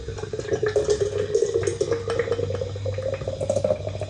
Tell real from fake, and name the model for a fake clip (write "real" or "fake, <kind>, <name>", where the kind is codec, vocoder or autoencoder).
real